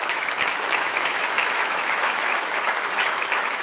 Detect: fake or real fake